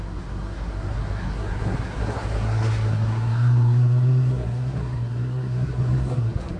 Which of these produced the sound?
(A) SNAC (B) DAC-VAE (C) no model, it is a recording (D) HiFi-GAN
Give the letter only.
A